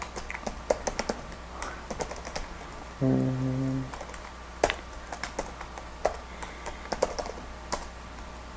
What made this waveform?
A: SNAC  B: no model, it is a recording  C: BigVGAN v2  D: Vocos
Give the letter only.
B